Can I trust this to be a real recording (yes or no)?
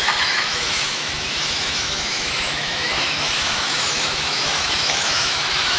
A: no